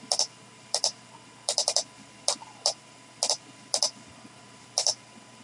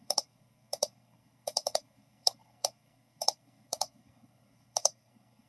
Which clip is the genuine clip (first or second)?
first